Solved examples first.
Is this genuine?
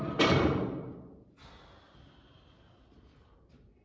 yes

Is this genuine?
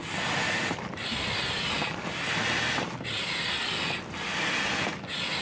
yes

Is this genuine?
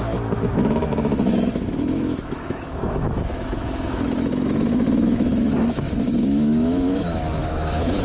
no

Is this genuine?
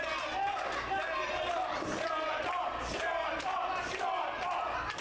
yes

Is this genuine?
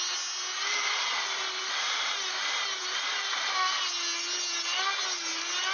yes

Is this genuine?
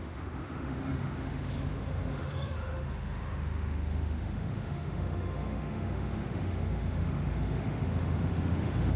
no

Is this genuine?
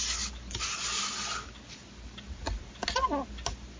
yes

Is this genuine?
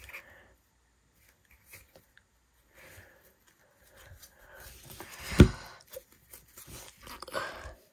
yes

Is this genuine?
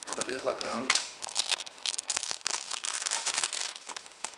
no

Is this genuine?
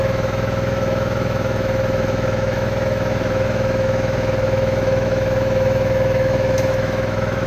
no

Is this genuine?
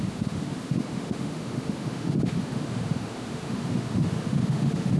no